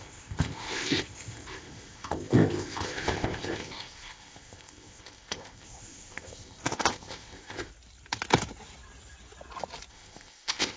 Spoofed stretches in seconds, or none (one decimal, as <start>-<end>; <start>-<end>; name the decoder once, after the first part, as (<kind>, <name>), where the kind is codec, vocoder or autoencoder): 0.0-7.7 (codec, ZipCodec); 9.9-10.8